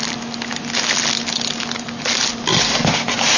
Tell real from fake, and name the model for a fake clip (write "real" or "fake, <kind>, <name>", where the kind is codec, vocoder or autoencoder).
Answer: real